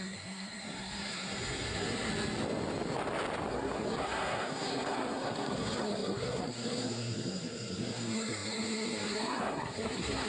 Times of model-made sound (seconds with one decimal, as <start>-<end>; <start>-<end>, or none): 0.0-2.1; 3.5-10.3